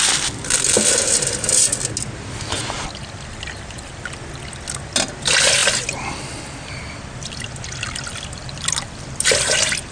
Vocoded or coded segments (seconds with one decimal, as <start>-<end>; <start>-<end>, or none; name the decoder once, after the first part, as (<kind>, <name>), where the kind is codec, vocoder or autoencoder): none